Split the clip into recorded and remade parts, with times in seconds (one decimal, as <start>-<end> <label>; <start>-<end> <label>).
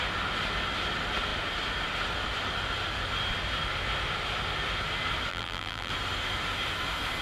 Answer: 0.0-5.3 recorded; 5.3-5.9 remade; 5.9-7.2 recorded